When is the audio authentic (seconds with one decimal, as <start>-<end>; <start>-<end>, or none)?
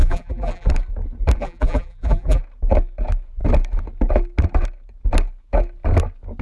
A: 0.7-1.4; 2.4-6.4